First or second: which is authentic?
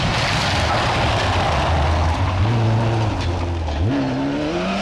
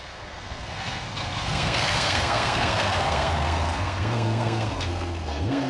first